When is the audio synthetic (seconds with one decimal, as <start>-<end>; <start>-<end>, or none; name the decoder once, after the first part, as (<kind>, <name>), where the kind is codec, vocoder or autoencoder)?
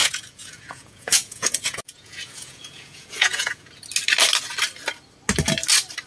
0.0-3.7 (vocoder, Vocos)